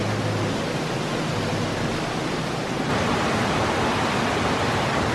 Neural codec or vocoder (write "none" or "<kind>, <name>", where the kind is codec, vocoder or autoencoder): none